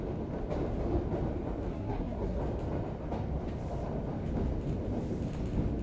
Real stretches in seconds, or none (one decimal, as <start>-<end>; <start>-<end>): 0.0-1.7; 2.4-5.8